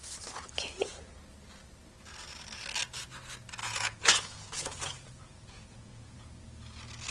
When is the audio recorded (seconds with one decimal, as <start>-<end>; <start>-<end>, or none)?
0.0-3.6; 6.3-7.1